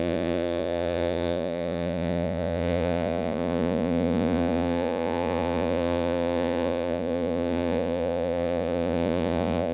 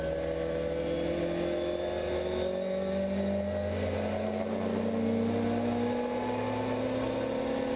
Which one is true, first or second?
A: second